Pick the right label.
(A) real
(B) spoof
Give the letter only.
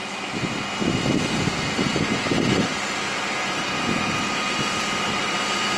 A